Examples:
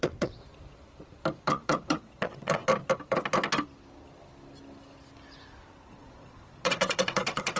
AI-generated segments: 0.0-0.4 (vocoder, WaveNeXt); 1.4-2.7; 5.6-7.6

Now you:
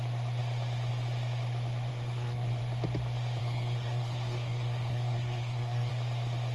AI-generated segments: 1.9-2.6 (codec, SNAC); 3.4-5.9

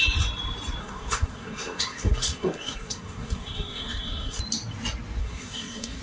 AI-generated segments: 0.8-4.4 (codec, SNAC); 5.2-6.0

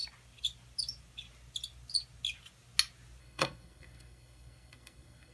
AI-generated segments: 3.2-5.3 (codec, SNAC)

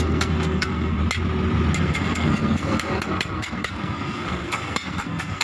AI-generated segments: 0.0-1.0 (codec, SNAC); 1.8-5.4